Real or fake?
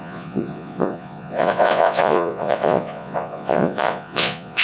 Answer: fake